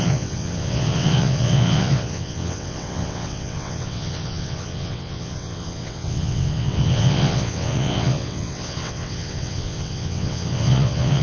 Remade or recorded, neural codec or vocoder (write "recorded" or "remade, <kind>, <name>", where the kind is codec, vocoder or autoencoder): remade, vocoder, WaveNeXt